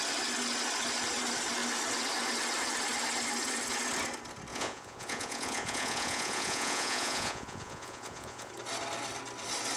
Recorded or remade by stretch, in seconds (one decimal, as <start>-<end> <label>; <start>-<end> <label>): 0.0-4.5 recorded; 4.5-8.5 remade; 8.5-9.8 recorded